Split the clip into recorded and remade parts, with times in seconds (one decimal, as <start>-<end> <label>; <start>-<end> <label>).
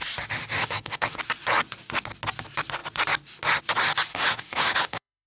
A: 0.0-0.4 recorded; 0.4-1.2 remade; 1.2-4.1 recorded; 4.1-5.3 remade